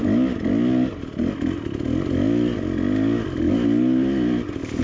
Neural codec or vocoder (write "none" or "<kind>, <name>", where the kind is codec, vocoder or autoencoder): none